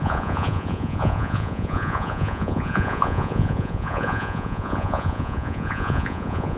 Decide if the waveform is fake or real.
fake